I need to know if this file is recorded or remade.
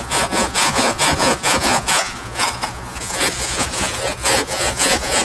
remade